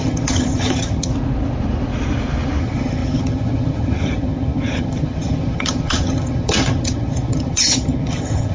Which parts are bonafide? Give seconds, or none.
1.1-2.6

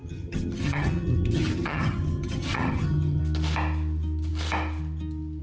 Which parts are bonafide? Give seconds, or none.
3.2-5.4

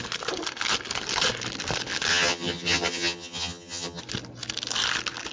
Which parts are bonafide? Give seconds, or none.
0.0-2.1; 4.0-5.3

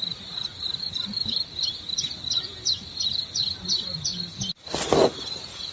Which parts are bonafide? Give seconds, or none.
0.0-5.7

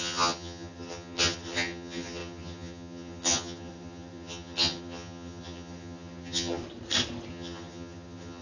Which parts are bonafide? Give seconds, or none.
6.6-7.3

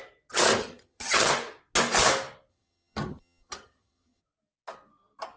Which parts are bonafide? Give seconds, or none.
0.0-0.6; 1.3-2.5; 4.2-5.4

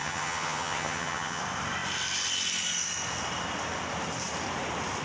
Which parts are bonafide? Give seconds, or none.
1.4-5.0

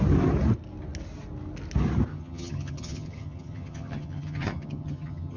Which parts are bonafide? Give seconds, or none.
0.0-2.1